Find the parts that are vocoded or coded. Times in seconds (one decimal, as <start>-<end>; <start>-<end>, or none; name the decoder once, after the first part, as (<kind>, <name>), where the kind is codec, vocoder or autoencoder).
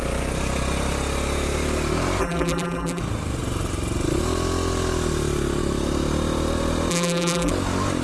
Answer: 2.2-3.0 (vocoder, BigVGAN v2); 6.9-7.5